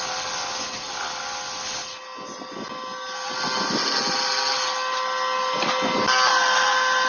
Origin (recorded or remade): recorded